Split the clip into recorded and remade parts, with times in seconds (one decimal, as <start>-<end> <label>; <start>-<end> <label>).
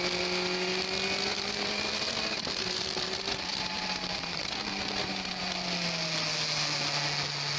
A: 0.0-1.3 recorded; 1.3-5.4 remade; 5.4-7.6 recorded